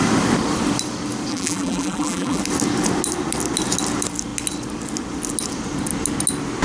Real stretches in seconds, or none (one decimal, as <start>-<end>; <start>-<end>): 0.0-1.3; 2.4-6.6